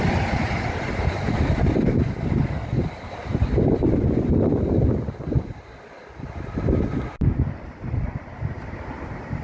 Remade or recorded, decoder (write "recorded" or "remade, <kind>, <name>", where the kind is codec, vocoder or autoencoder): recorded